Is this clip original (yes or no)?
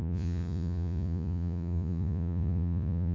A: no